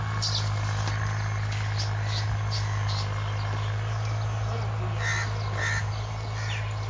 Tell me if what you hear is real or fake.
real